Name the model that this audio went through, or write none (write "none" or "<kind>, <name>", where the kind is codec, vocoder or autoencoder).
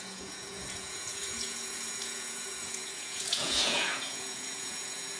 vocoder, Vocos